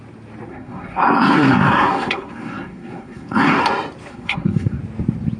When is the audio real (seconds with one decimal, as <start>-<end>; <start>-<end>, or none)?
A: 0.0-0.5; 3.6-4.1; 4.8-5.4